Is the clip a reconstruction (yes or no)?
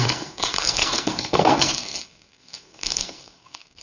yes